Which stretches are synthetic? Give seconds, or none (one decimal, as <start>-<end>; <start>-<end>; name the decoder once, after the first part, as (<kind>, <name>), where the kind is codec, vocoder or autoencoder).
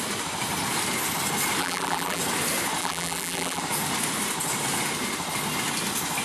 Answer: 1.6-2.2 (vocoder, BigVGAN v2); 2.8-3.6